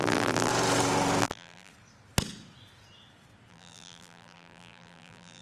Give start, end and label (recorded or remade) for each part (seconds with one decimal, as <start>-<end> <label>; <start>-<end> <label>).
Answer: 0.0-0.5 remade; 0.5-1.2 recorded; 1.2-1.7 remade; 1.7-3.5 recorded; 3.5-5.4 remade